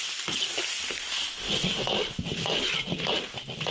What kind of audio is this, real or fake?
real